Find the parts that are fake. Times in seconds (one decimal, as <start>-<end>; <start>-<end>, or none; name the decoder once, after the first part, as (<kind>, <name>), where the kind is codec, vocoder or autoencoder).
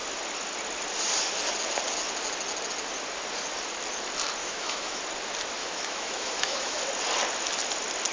4.4-5.0 (autoencoder, DAC-VAE); 5.6-6.8